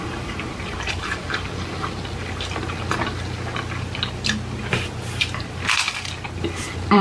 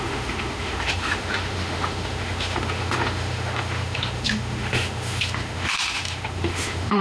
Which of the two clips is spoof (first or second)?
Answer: second